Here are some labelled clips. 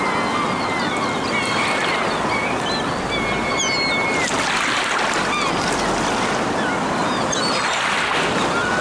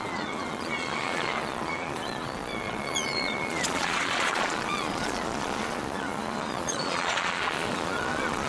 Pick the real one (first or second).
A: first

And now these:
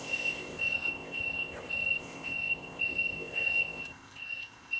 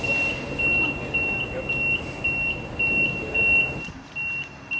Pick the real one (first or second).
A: second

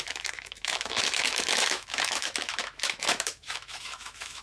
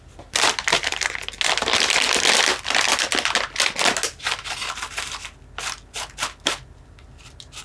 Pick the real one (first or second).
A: second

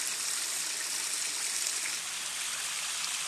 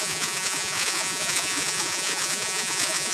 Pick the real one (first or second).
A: first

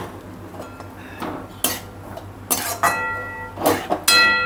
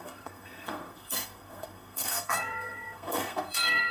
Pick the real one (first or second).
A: first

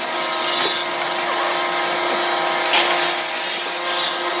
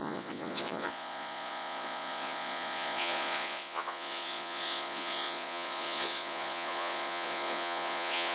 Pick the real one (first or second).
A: first